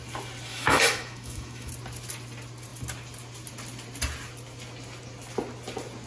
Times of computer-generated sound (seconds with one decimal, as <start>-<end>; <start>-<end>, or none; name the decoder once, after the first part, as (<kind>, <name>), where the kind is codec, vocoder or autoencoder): 0.5-1.7 (autoencoder, DAC-VAE)